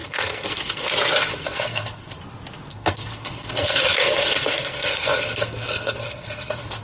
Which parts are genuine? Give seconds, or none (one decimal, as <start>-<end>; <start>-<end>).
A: 0.9-1.3; 2.2-2.7